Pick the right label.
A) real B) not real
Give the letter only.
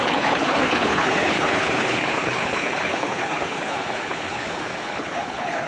B